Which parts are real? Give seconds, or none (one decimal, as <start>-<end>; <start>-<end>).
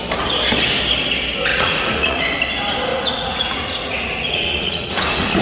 0.0-1.5; 2.2-2.9